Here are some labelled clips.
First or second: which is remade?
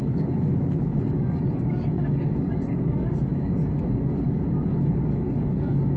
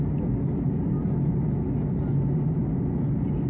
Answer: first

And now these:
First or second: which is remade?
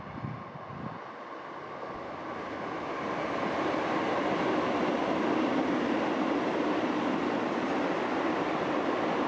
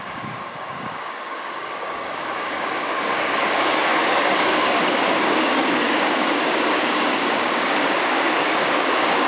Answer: second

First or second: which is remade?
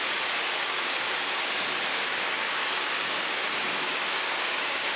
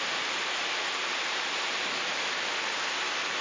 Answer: first